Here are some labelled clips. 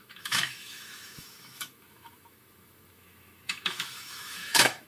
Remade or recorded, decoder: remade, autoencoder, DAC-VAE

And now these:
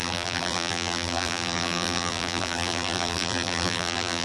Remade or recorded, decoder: remade, vocoder, BigVGAN v2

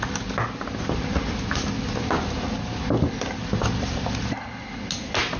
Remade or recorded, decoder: recorded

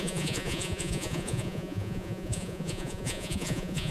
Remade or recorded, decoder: remade, vocoder, Vocos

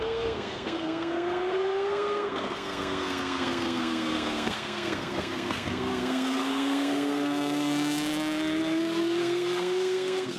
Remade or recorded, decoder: remade, codec, SNAC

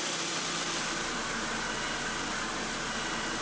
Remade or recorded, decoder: recorded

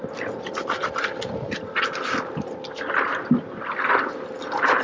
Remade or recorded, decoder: recorded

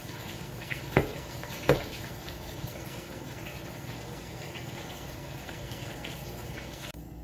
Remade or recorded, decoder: remade, codec, SNAC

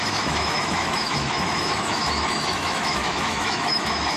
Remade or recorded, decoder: remade, autoencoder, DAC-VAE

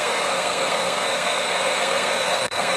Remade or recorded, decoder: remade, codec, SNAC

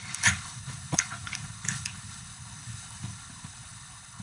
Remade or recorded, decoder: remade, codec, HILCodec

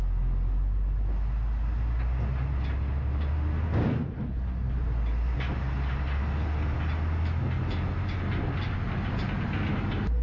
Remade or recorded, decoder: recorded